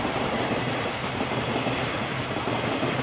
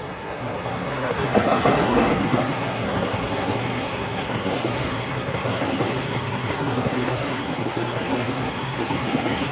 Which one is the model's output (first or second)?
second